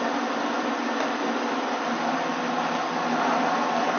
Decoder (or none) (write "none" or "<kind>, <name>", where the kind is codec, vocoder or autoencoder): none